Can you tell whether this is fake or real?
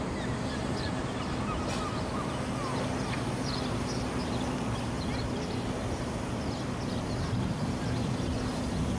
real